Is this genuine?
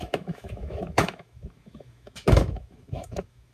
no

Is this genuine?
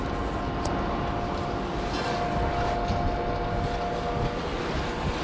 yes